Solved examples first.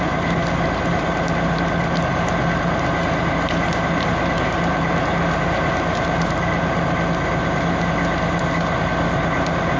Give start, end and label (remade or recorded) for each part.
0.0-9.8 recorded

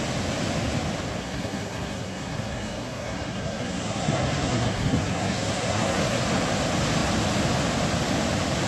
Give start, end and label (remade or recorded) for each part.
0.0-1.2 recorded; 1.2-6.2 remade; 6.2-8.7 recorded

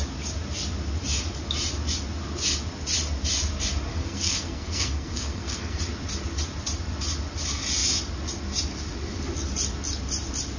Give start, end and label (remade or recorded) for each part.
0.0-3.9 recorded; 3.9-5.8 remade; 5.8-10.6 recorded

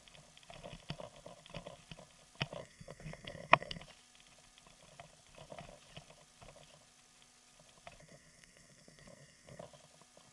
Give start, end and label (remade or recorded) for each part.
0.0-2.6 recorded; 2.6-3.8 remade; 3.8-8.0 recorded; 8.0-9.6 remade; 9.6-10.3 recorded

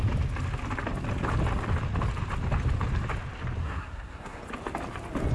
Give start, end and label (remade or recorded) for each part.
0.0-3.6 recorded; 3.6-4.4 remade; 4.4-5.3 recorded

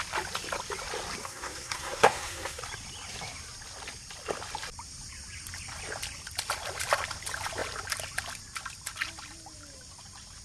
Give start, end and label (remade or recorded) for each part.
0.0-1.2 recorded; 1.2-2.6 remade; 2.6-10.4 recorded